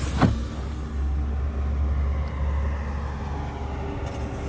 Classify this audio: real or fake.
real